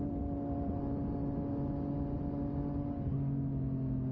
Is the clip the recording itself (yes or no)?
yes